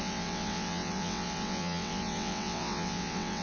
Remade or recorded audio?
remade